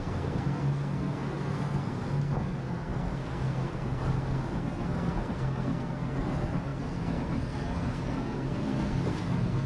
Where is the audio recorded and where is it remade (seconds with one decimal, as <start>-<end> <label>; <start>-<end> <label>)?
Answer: 0.0-9.7 remade